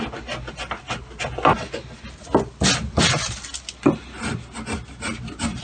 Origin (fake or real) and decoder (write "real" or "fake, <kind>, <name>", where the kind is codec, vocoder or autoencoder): real